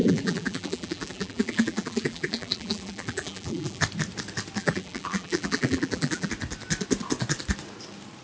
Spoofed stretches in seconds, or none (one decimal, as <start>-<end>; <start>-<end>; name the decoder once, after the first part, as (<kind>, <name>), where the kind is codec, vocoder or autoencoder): 0.0-3.8 (vocoder, BigVGAN v2); 4.6-6.3